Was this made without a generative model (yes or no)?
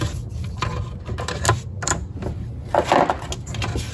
yes